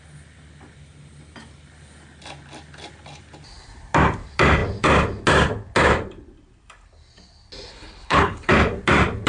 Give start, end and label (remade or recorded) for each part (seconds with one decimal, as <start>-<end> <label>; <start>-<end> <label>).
0.0-7.7 recorded; 7.7-8.5 remade; 8.5-9.3 recorded